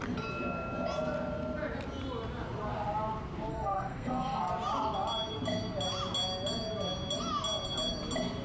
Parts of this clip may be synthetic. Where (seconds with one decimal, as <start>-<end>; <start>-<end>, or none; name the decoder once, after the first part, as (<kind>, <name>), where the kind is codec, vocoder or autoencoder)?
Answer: 3.5-4.5 (codec, SNAC)